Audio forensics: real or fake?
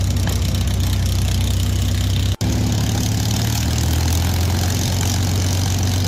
real